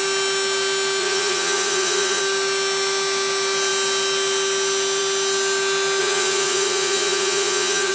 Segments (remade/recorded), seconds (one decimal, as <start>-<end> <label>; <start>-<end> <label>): 0.0-1.0 recorded; 1.0-2.2 remade; 2.2-6.0 recorded; 6.0-7.9 remade